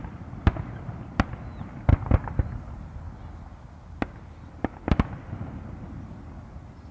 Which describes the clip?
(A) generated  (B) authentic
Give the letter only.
B